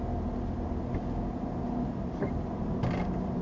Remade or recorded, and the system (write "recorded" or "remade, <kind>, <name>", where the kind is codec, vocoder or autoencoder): recorded